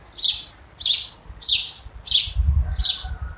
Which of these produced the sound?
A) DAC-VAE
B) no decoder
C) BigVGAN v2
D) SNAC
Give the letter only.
B